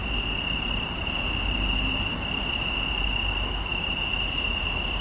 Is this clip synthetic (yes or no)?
no